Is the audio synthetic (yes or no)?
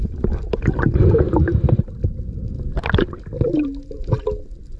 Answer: no